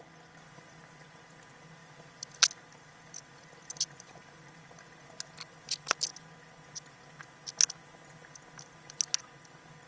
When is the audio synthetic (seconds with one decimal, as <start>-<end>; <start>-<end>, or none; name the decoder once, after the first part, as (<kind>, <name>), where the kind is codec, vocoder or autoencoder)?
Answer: none